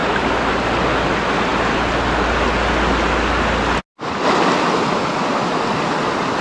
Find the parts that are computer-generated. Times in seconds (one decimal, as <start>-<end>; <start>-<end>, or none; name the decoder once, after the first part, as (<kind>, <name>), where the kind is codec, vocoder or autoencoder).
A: none

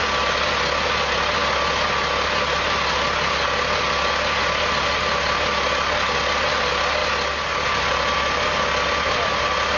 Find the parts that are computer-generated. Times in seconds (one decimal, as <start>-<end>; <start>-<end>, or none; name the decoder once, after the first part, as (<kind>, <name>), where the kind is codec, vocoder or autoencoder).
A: none

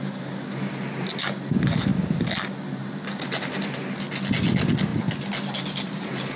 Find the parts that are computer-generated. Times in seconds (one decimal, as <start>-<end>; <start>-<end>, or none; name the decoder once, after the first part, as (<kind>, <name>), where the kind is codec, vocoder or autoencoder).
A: none